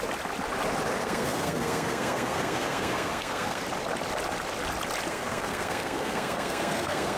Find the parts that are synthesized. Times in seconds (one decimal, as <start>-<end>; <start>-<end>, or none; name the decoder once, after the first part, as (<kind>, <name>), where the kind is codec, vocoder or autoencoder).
1.0-3.6 (codec, SNAC); 5.1-7.2

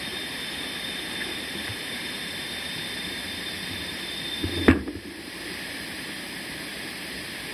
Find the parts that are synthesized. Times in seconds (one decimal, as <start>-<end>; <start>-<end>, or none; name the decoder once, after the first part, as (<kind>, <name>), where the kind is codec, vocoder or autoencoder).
0.0-6.7 (vocoder, BigVGAN v2)

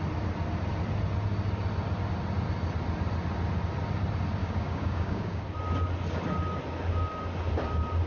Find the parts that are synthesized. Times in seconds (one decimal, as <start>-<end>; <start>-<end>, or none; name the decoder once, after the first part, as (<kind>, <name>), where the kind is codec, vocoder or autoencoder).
4.4-5.4 (codec, DAC)

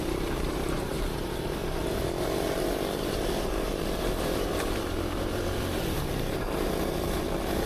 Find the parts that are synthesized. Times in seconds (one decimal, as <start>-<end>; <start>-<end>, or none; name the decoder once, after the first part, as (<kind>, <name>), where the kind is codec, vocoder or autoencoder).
0.0-1.6 (vocoder, BigVGAN v2); 2.2-7.7

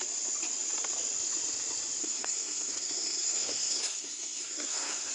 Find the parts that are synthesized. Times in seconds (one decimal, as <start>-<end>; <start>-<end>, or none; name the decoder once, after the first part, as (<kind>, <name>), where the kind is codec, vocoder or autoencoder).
2.0-5.1 (codec, SNAC)

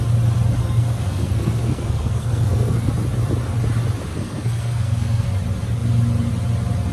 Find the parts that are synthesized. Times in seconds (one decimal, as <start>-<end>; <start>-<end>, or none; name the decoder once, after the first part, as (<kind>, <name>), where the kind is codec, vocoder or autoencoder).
0.6-2.9 (codec, SNAC); 4.1-5.3